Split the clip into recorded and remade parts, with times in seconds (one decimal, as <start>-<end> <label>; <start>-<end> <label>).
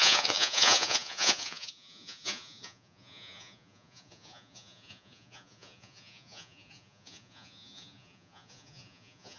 0.0-9.4 remade